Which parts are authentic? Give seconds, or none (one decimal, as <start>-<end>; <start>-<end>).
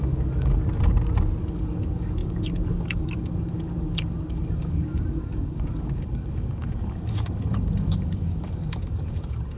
0.6-1.4